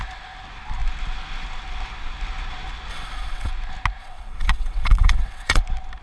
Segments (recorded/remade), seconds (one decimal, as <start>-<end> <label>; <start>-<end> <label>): 0.0-2.9 recorded; 2.9-3.5 remade; 3.5-4.0 recorded; 4.0-5.6 remade; 5.6-6.0 recorded